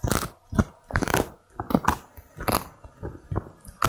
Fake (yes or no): no